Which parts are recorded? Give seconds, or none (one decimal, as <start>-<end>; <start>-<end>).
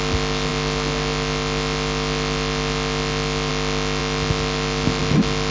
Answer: 0.0-5.5